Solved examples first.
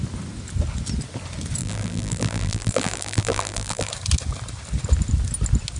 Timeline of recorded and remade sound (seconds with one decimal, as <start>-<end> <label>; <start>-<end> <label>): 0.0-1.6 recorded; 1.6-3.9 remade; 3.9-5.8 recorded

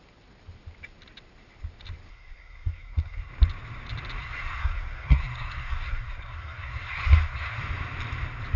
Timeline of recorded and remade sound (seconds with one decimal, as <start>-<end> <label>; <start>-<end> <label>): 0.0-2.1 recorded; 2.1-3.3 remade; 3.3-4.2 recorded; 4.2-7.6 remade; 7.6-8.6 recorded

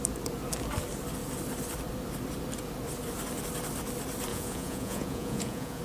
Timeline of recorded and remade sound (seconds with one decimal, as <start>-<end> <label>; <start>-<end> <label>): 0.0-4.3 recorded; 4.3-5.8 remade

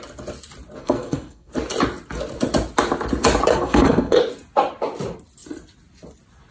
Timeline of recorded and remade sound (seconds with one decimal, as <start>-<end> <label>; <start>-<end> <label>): 0.0-0.8 recorded; 0.8-1.5 remade; 1.5-3.5 recorded; 3.5-4.2 remade; 4.2-6.5 recorded

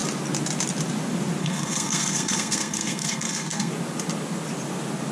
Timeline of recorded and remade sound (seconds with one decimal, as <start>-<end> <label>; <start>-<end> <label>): 0.0-1.4 recorded; 1.4-3.7 remade; 3.7-5.1 recorded